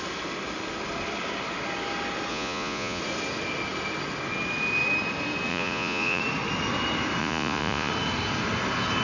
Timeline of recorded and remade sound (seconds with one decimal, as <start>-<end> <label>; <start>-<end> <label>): 0.0-2.3 recorded; 2.3-3.0 remade; 3.0-5.5 recorded; 5.5-6.2 remade; 6.2-7.2 recorded; 7.2-7.9 remade; 7.9-9.0 recorded